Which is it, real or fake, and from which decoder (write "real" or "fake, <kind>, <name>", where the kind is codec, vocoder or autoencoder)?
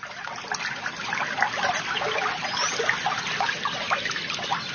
real